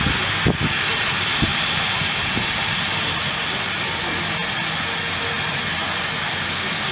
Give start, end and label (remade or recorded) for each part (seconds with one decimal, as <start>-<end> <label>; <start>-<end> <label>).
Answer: 0.0-1.5 recorded; 1.5-3.3 remade; 3.3-6.9 recorded